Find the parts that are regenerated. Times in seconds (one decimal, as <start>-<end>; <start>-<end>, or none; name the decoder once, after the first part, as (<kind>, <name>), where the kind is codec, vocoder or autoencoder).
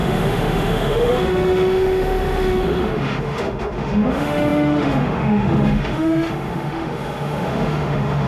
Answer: 0.0-8.3 (autoencoder, DAC-VAE)